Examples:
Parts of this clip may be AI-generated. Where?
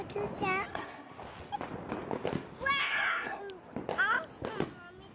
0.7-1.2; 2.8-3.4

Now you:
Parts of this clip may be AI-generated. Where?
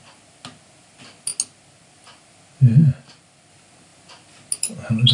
none